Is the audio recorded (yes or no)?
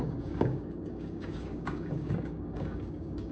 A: no